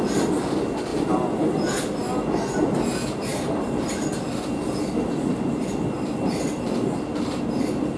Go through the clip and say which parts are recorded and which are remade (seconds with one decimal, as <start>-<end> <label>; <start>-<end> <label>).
0.0-3.3 recorded; 3.3-6.3 remade; 6.3-8.0 recorded